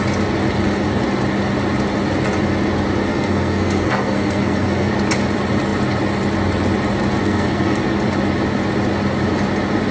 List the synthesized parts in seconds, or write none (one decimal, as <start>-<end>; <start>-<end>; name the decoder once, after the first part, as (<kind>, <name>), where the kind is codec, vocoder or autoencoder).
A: 3.1-4.9 (codec, SNAC); 7.1-7.8